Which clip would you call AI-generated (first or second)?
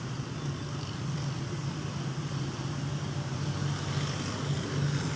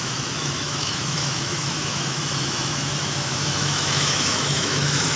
second